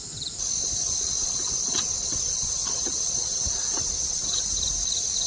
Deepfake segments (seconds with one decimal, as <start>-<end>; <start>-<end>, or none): 1.2-4.3